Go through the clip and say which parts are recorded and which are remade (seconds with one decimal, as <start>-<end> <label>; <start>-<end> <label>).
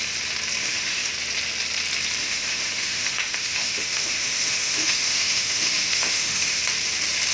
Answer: 0.0-0.6 recorded; 0.6-1.1 remade; 1.1-2.2 recorded; 2.2-6.6 remade; 6.6-7.3 recorded